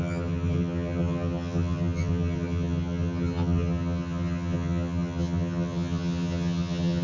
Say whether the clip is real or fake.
fake